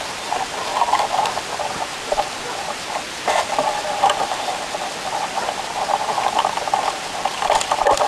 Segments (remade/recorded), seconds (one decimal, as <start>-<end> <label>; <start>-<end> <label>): 0.0-0.7 remade; 0.7-1.6 recorded; 1.6-8.1 remade